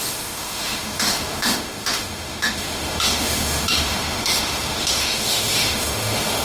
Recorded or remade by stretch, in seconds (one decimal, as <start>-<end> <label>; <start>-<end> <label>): 0.0-6.4 remade